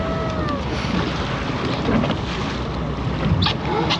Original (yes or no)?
yes